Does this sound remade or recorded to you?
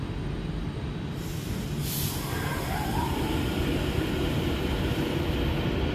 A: recorded